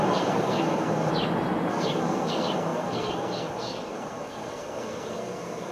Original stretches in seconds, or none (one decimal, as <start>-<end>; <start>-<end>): 1.1-1.7